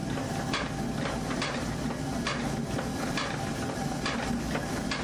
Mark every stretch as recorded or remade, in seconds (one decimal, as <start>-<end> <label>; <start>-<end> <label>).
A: 0.0-5.0 recorded

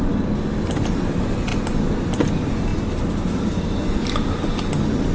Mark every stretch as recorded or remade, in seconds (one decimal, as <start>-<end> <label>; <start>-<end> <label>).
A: 0.0-5.1 recorded

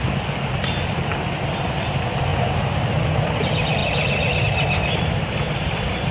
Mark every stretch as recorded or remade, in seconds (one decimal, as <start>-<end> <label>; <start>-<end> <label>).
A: 0.0-2.3 recorded; 2.3-3.1 remade; 3.1-6.1 recorded

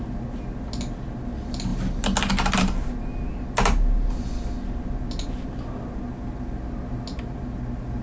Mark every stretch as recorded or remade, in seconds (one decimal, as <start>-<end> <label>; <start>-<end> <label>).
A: 0.0-8.0 recorded